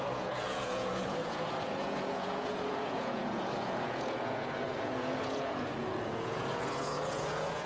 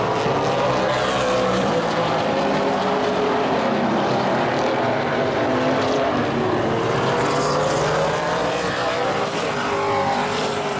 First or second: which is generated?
first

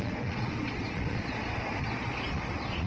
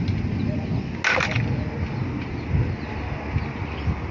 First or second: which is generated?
first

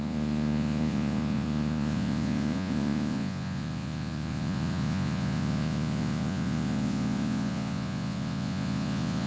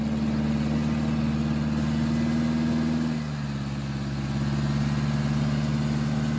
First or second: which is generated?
first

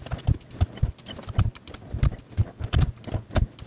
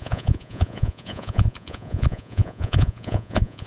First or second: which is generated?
second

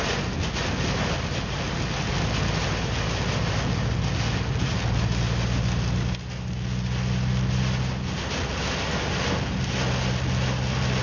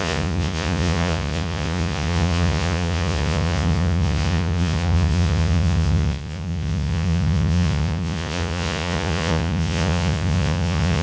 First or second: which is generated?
second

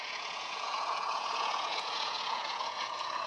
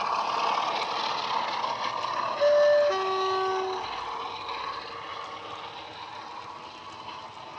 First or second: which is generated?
first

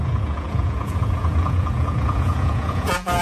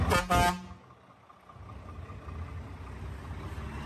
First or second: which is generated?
first